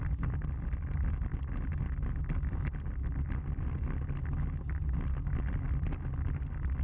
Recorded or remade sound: recorded